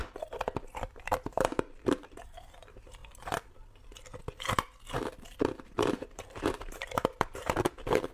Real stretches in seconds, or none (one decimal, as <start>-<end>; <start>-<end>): 0.0-0.6; 3.0-5.4